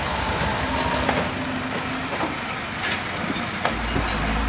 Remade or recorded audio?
recorded